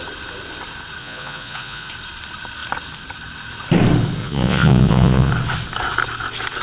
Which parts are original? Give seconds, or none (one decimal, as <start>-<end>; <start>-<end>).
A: 0.0-1.0; 1.9-4.2; 5.3-6.6

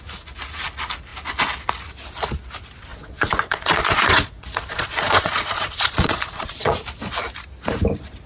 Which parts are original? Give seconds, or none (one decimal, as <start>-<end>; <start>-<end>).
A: 0.0-2.9; 6.7-8.3

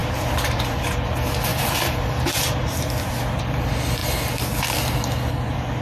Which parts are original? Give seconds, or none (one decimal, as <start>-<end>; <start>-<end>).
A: 0.8-1.5; 3.1-5.8

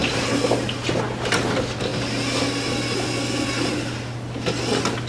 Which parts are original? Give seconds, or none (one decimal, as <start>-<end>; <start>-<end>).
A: 0.0-5.1

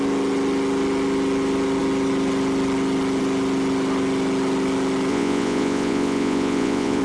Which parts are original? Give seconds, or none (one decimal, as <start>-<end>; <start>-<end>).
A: 0.0-5.1

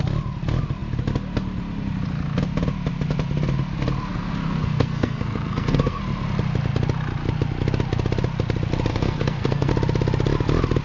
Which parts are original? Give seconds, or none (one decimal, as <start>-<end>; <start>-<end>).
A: 0.0-4.1; 6.0-8.9; 9.7-10.8

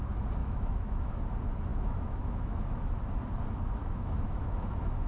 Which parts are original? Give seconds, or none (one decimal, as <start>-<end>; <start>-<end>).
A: 0.0-0.4; 1.1-1.7; 3.0-3.8

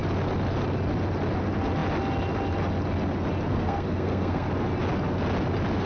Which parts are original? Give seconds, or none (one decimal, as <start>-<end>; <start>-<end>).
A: 0.0-3.5; 4.5-5.9